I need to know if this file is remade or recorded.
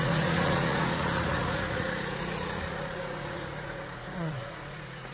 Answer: remade